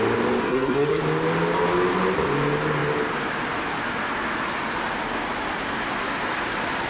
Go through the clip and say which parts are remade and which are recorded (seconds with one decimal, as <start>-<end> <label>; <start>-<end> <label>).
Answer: 0.0-0.4 recorded; 0.4-1.0 remade; 1.0-6.9 recorded